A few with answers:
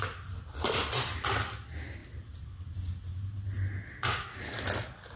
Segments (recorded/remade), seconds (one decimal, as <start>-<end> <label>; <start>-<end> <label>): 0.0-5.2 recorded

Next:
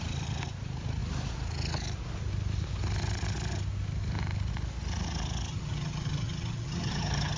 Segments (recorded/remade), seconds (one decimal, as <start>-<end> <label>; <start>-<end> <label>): 0.0-5.5 recorded; 5.5-7.4 remade

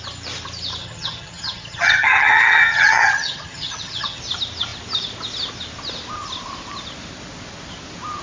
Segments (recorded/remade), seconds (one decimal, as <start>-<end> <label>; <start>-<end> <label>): 0.0-0.8 recorded; 0.8-4.2 remade; 4.2-8.2 recorded